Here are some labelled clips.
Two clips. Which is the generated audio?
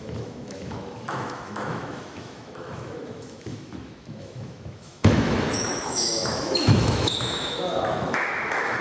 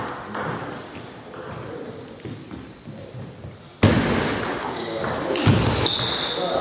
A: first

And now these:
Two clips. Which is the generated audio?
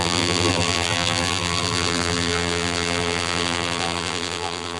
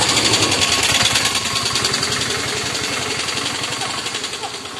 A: first